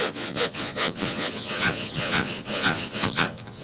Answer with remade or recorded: remade